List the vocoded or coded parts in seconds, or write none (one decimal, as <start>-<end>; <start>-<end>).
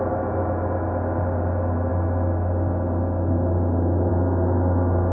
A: none